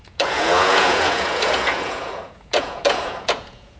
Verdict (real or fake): fake